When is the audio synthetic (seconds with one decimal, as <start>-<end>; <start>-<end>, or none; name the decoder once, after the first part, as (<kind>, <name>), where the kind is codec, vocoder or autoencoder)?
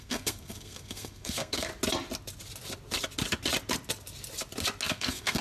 0.0-1.7 (codec, SNAC); 4.9-5.4